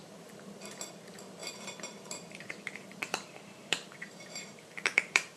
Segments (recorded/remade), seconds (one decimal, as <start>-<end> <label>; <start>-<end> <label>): 0.0-5.4 remade